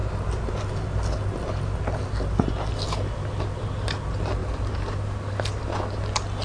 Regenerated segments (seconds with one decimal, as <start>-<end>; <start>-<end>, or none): none